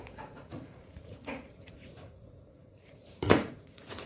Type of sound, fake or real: fake